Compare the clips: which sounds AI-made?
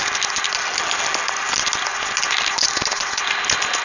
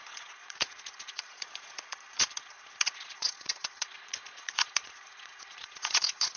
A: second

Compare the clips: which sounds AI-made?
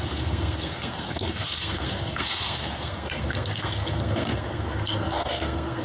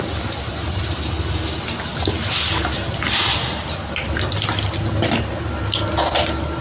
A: first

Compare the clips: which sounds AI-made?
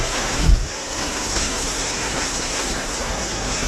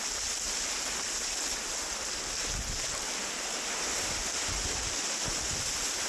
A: first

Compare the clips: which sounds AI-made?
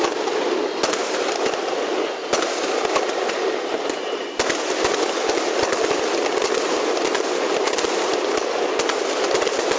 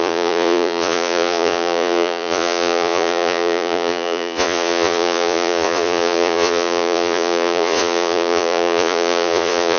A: second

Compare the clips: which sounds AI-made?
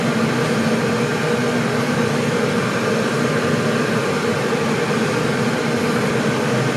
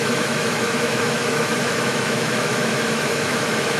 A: second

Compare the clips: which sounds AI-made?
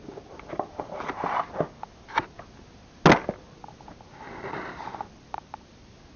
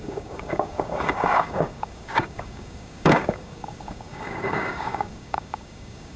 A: second